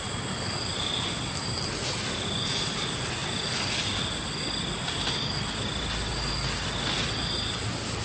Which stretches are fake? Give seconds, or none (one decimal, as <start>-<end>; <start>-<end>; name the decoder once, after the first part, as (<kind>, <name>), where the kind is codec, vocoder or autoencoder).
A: none